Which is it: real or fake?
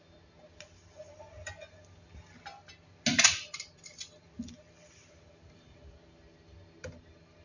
real